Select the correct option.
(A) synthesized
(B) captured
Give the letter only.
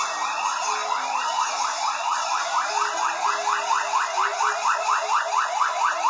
B